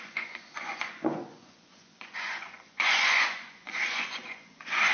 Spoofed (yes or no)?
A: yes